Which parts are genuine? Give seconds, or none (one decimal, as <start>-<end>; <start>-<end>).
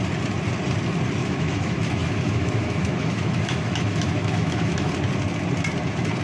0.0-1.2; 4.9-6.2